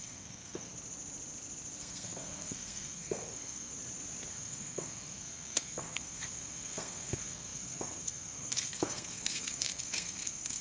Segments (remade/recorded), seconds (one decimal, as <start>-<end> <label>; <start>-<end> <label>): 0.0-0.7 remade; 0.7-1.8 recorded; 1.8-3.7 remade; 3.7-4.3 recorded; 4.3-10.6 remade